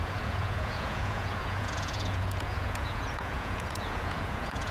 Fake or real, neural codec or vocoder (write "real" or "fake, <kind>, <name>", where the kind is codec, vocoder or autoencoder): fake, vocoder, Vocos